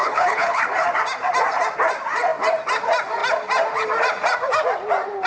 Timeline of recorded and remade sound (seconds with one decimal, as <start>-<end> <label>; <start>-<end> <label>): 0.0-0.6 remade; 0.6-5.3 recorded